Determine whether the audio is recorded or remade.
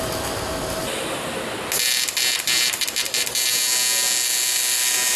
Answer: recorded